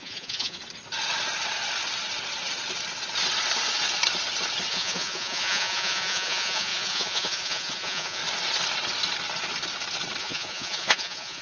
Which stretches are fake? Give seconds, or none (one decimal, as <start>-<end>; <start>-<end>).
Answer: 0.0-0.6; 4.7-8.2; 10.2-11.4